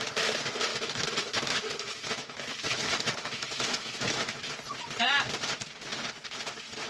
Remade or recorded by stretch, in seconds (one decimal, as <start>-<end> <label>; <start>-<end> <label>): 0.0-0.7 recorded; 0.7-4.5 remade; 4.5-6.9 recorded